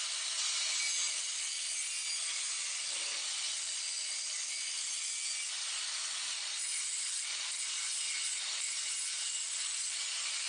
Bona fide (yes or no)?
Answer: yes